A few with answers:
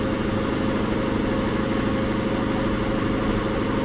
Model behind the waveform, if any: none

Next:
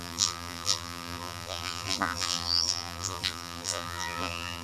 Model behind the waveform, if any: vocoder, BigVGAN v2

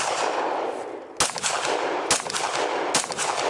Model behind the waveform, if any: none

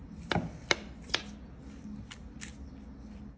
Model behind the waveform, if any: none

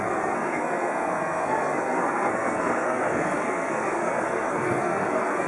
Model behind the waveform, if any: codec, SNAC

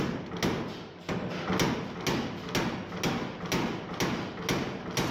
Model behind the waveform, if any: none